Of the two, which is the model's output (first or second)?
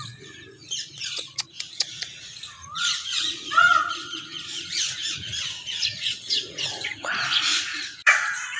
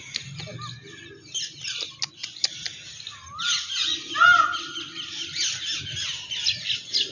first